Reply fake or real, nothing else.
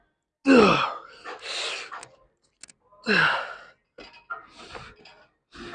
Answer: real